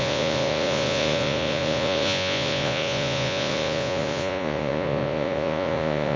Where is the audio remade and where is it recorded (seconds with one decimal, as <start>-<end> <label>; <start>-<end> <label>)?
0.0-6.2 remade